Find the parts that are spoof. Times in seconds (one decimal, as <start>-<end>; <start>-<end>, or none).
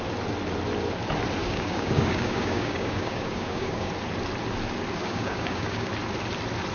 1.4-3.9; 5.0-5.9